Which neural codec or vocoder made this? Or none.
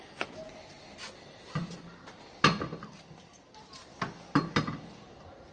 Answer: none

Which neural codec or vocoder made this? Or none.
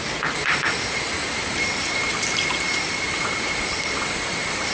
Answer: vocoder, BigVGAN v2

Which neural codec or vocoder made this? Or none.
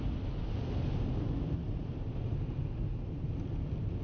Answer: none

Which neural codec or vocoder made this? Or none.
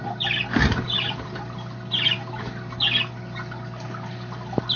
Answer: none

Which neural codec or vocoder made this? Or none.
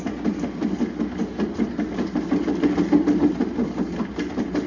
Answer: none